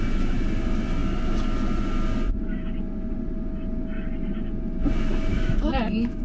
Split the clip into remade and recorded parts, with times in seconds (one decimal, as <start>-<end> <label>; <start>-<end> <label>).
0.0-5.3 recorded; 5.3-6.2 remade